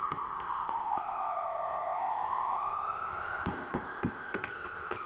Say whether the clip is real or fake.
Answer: fake